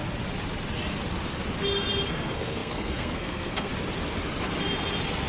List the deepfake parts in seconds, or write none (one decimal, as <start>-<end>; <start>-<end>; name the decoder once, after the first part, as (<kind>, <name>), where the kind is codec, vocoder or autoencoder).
2.1-3.7 (codec, SNAC)